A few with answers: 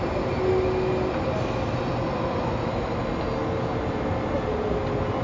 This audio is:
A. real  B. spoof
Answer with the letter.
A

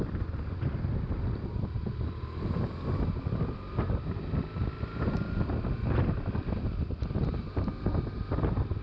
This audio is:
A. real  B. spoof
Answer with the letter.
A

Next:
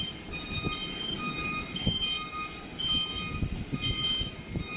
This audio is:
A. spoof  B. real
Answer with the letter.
B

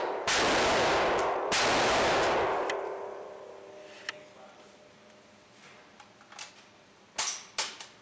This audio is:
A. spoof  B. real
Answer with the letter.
B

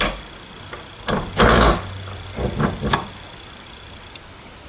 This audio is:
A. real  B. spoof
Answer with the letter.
B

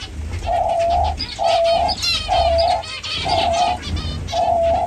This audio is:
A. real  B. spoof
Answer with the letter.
A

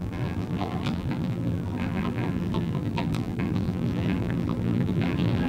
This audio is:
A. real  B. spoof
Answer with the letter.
B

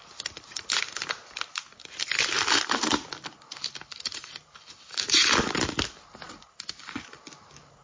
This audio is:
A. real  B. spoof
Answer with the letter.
A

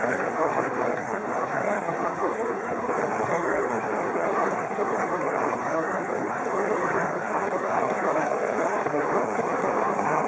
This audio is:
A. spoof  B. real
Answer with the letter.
A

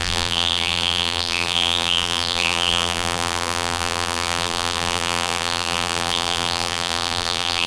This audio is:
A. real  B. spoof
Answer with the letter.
B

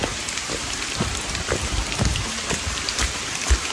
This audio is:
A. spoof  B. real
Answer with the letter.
B